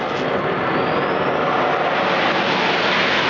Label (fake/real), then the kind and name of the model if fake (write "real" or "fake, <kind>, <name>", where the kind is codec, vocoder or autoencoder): real